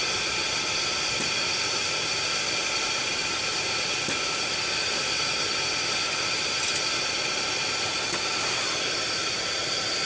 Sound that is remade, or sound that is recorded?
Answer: recorded